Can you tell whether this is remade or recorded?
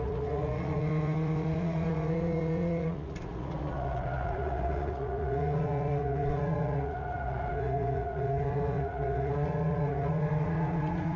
remade